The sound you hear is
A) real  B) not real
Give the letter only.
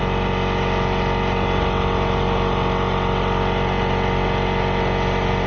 A